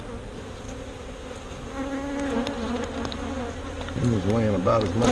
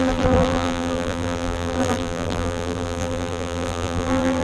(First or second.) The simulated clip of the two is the second